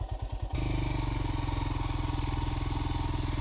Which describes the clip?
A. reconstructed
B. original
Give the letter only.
B